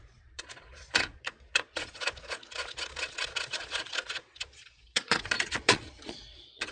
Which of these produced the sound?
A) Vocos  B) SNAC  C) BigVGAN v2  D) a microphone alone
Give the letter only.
A